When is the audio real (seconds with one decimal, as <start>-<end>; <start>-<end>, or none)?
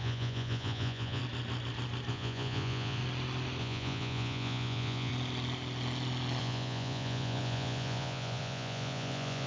1.2-2.1; 3.0-3.6; 5.1-6.4